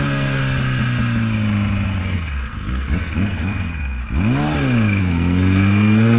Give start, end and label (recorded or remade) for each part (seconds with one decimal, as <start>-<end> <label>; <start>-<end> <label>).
0.0-0.4 remade; 0.4-2.0 recorded; 2.0-4.0 remade; 4.0-5.0 recorded; 5.0-6.2 remade